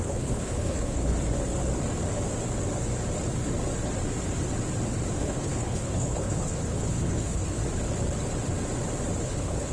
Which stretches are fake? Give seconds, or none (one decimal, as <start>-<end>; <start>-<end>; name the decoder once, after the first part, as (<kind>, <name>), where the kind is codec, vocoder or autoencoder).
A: 0.0-1.1 (codec, HILCodec); 5.2-7.6; 9.2-9.7